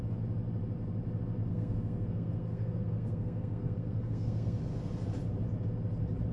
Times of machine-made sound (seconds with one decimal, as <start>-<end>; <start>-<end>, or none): 1.5-4.6